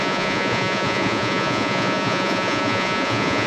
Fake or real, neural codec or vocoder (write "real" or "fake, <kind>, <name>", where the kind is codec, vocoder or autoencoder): fake, vocoder, Vocos